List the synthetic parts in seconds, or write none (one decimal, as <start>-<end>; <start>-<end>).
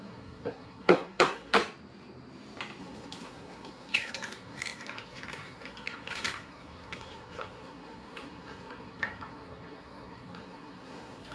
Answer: 0.0-1.6; 2.8-11.3